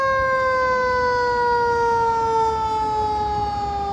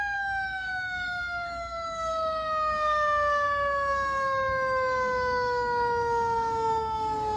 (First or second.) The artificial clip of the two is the second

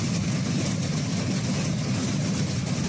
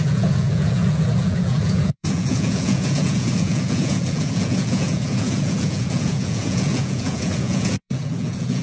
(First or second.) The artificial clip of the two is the second